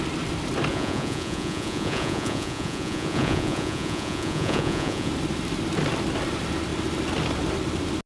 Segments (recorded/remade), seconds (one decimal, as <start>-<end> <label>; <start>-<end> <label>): 0.0-0.7 recorded; 0.7-5.1 remade; 5.1-8.1 recorded